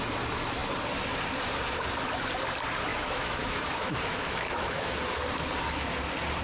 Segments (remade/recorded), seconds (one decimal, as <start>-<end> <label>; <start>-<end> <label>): 0.0-2.9 recorded; 2.9-4.9 remade; 4.9-6.4 recorded